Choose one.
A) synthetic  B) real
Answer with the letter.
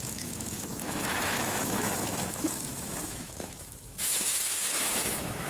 A